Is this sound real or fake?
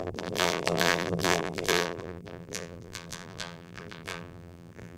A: fake